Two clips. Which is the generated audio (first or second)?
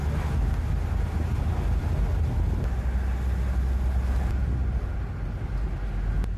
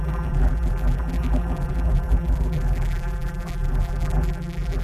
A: second